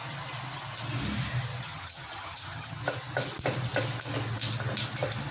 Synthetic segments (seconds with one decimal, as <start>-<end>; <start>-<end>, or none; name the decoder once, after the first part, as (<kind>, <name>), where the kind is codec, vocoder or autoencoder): 1.6-2.8 (vocoder, HiFi-GAN)